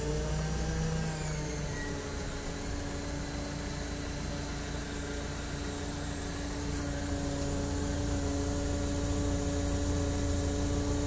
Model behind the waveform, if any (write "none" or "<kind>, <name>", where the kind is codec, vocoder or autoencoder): none